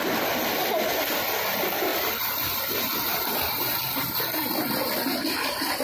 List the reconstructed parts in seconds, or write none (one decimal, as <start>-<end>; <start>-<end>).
1.9-2.6; 3.1-4.5